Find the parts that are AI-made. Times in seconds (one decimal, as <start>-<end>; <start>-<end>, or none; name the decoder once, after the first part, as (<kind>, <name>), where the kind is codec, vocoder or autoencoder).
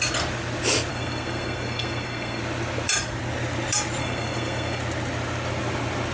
0.9-2.4 (codec, SNAC); 4.0-4.8